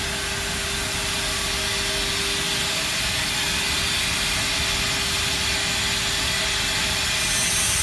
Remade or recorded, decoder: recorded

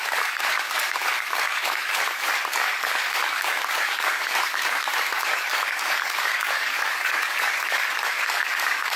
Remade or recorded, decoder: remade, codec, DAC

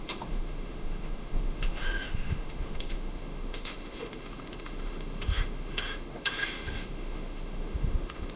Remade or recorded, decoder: remade, autoencoder, DAC-VAE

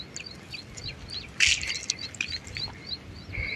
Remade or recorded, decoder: recorded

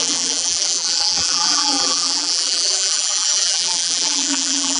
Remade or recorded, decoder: remade, vocoder, BigVGAN v2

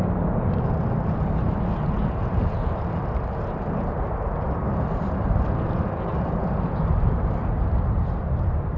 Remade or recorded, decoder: recorded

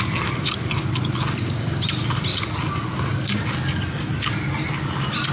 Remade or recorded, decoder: recorded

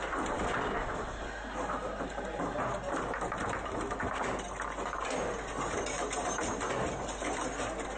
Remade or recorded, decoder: recorded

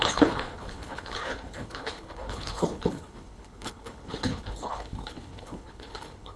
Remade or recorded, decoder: remade, codec, HILCodec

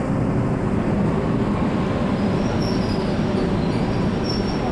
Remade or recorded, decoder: recorded